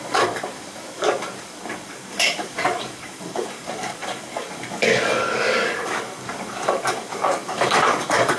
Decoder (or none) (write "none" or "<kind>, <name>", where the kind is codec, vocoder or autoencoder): codec, DAC